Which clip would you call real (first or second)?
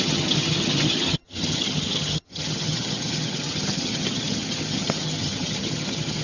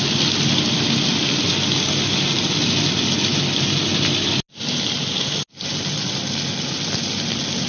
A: second